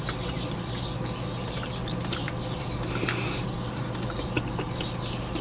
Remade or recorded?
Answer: recorded